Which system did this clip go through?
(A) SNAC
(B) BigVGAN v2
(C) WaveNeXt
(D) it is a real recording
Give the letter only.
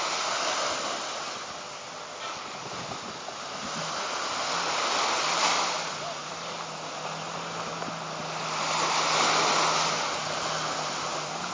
D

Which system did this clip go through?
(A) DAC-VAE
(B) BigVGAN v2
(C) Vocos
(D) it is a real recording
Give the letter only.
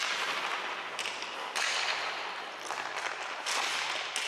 D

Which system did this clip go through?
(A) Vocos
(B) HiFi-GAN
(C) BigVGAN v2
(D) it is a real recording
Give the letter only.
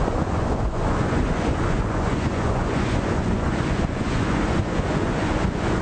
A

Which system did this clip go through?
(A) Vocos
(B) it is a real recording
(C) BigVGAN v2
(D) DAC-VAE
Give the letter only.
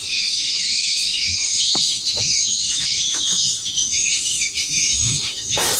D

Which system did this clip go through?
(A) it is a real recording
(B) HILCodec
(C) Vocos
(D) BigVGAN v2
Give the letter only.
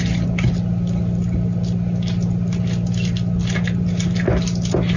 A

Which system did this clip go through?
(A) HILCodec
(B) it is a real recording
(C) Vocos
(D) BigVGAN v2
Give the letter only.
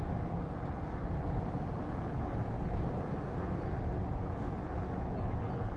B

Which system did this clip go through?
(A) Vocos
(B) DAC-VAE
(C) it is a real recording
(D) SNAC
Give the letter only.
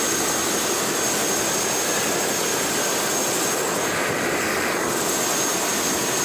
C